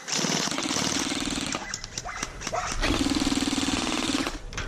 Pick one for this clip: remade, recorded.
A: recorded